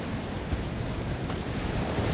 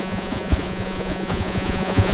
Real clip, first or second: first